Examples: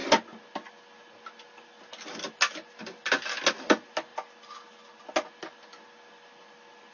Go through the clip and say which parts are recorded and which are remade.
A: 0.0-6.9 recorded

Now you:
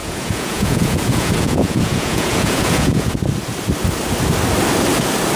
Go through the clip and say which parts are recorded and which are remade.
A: 0.0-3.2 remade; 3.2-5.4 recorded

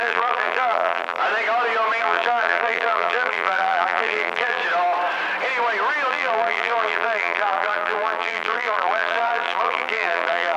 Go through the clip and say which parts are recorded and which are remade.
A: 0.0-1.2 remade; 1.2-2.0 recorded; 2.0-4.6 remade; 4.6-6.1 recorded; 6.1-10.6 remade